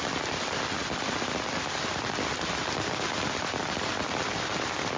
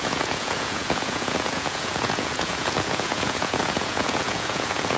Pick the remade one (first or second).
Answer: second